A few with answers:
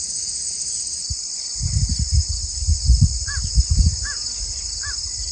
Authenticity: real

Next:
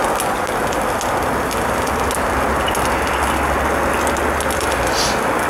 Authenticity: real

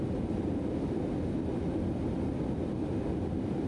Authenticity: real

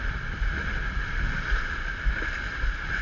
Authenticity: real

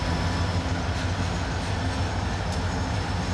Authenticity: real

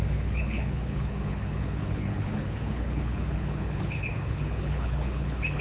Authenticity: fake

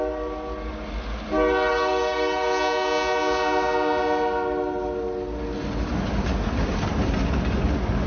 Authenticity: real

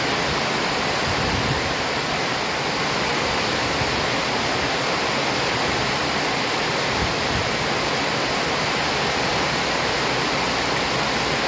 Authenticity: real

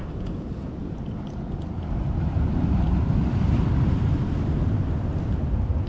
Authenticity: real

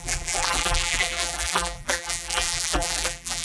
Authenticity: fake